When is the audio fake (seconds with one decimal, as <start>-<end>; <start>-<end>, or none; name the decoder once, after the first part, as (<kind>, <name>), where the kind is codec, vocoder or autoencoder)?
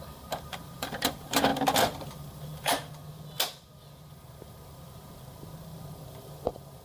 0.0-1.5 (vocoder, BigVGAN v2); 2.0-3.0; 4.1-6.8